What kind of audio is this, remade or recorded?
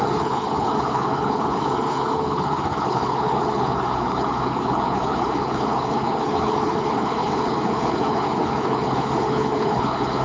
remade